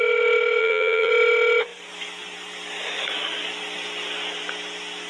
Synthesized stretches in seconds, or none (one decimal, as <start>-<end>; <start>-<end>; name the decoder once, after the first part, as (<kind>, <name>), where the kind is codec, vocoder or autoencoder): 0.6-1.1 (vocoder, BigVGAN v2)